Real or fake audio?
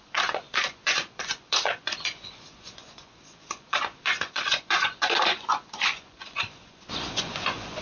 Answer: fake